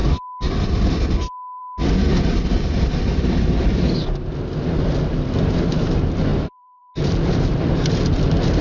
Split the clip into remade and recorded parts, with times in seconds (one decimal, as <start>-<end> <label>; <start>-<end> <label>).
0.0-6.3 recorded; 6.3-6.9 remade; 6.9-8.6 recorded